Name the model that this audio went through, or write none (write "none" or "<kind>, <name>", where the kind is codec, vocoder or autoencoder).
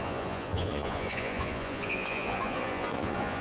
vocoder, Vocos